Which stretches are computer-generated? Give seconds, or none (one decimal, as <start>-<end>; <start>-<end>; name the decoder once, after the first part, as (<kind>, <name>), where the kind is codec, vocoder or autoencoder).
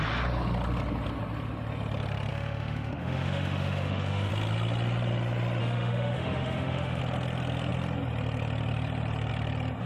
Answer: 2.3-4.3 (autoencoder, DAC-VAE); 5.6-7.0